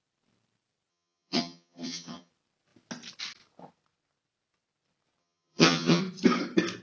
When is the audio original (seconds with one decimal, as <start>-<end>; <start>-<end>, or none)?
0.0-0.9; 2.3-5.2; 6.0-6.8